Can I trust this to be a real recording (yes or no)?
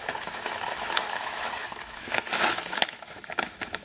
no